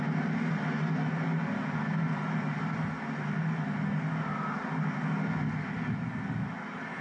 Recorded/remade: recorded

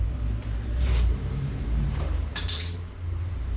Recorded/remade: remade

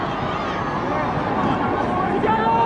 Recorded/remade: recorded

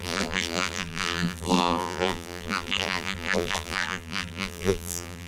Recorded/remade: remade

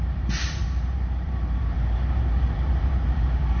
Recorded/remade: remade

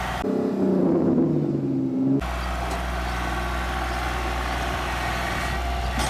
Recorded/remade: recorded